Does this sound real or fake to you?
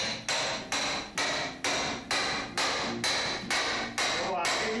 real